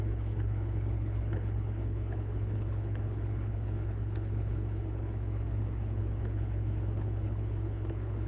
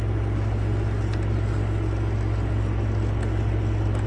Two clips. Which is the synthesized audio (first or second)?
first